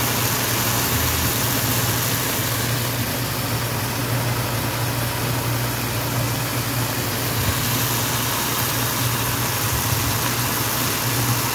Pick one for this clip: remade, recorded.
recorded